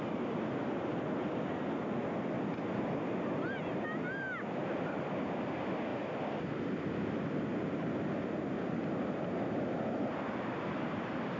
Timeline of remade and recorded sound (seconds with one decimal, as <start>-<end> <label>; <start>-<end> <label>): 0.0-11.4 recorded